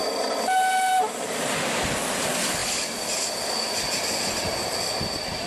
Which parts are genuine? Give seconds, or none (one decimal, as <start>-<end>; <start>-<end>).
0.0-5.5